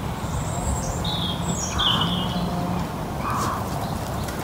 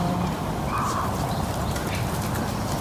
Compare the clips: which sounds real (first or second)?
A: first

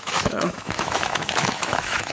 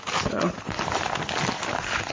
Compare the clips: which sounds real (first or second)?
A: second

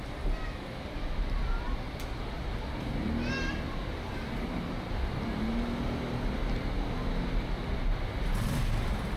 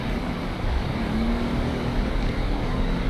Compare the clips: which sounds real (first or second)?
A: first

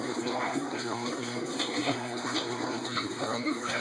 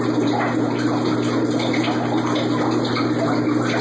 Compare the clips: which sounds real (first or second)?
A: second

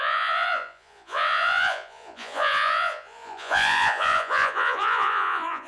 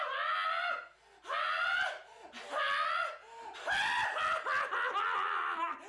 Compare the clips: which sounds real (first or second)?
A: second